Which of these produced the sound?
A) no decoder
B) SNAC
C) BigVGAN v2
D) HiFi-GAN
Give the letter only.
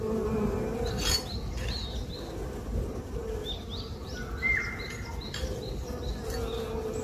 A